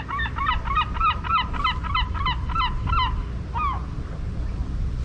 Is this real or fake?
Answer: real